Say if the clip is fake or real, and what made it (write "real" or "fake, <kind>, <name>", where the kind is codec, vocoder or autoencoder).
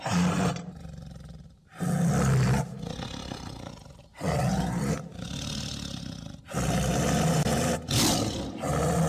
real